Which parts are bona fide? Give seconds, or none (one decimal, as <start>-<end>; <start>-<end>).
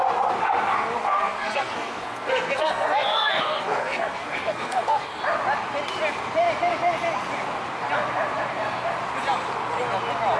0.0-1.0; 5.2-10.4